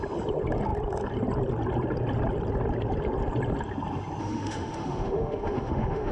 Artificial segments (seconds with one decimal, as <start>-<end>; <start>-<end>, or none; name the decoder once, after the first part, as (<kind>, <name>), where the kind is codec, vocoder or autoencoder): 4.2-6.1 (autoencoder, DAC-VAE)